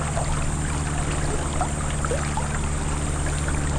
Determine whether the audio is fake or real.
real